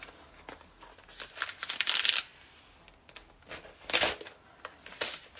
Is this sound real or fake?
real